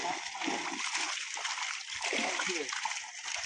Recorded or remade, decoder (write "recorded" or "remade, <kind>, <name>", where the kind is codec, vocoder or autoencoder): recorded